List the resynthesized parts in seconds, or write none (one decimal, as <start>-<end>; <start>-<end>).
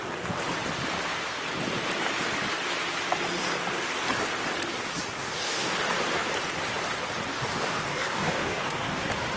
5.2-5.7; 7.3-9.0